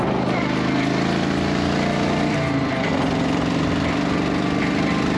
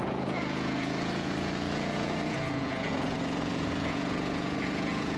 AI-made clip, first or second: second